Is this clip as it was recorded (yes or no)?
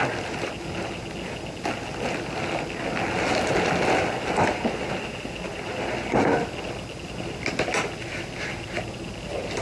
yes